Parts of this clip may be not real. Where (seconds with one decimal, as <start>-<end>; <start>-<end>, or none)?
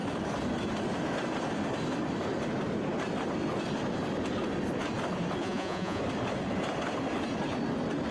5.4-6.0